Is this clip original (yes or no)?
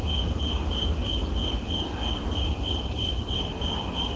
yes